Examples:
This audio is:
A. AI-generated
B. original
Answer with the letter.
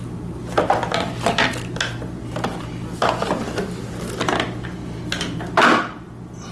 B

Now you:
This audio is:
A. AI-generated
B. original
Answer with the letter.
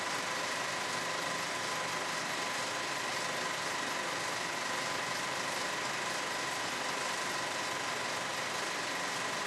B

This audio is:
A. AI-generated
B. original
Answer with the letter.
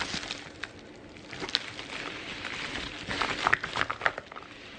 B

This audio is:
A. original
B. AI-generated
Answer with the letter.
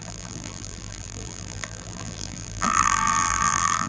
B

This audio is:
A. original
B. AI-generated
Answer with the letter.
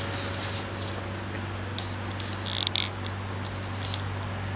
A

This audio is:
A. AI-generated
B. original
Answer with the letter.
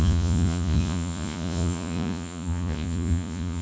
A